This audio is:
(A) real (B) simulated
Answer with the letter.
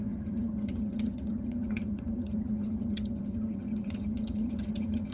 B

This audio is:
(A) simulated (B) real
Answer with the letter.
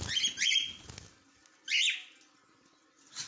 B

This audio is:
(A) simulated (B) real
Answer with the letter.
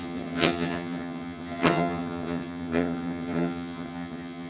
A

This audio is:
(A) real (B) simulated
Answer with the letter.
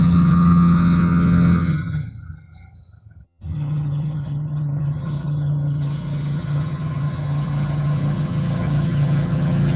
B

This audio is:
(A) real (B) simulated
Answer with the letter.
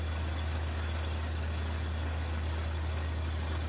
A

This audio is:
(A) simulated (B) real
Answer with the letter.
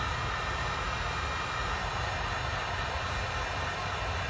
B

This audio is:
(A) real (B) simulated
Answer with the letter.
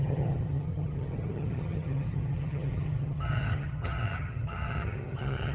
B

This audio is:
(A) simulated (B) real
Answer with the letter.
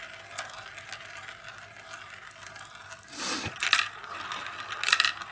B